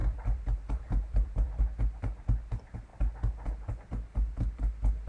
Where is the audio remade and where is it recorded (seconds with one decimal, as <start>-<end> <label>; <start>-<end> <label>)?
0.0-1.6 remade; 1.6-5.1 recorded